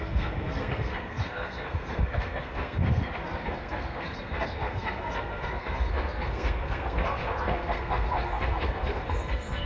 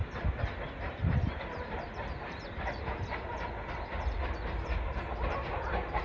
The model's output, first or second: first